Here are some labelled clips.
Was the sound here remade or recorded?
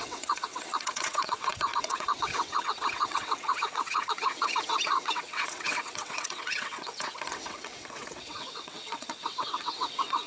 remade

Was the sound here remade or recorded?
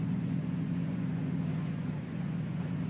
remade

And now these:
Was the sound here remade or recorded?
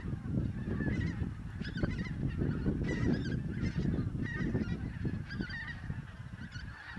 recorded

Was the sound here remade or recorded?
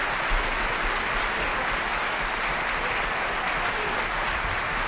recorded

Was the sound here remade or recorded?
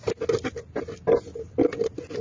recorded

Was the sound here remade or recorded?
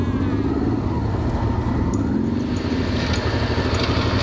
recorded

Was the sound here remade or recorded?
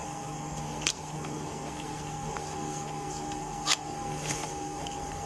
remade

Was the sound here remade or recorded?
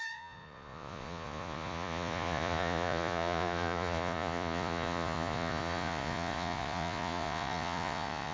remade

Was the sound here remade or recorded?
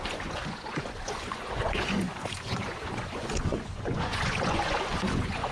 remade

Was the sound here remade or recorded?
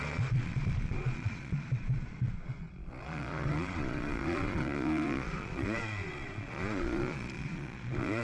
remade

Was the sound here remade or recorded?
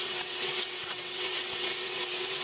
remade